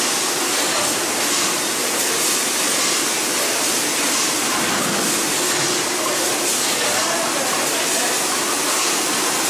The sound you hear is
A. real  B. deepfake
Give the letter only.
A